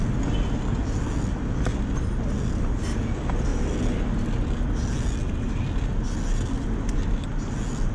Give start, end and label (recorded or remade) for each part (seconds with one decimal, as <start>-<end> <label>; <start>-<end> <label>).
0.0-7.9 recorded